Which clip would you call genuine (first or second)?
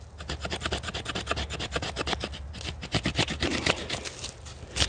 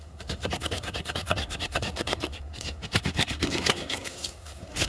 first